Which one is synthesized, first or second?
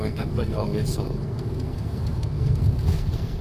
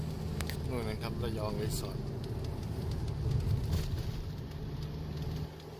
first